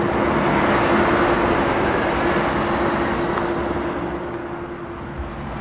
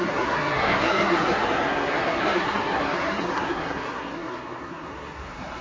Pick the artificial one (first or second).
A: second